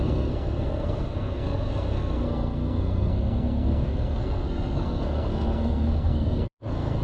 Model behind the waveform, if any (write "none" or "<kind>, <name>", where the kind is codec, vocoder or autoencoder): codec, SNAC